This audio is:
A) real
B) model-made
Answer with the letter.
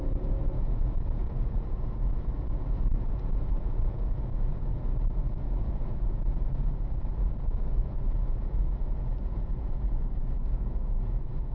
B